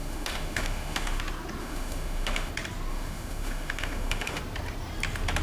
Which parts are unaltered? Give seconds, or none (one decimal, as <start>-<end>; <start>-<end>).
1.2-1.6; 2.5-2.9; 4.4-5.4